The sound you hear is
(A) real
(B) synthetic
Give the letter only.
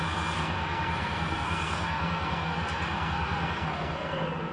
B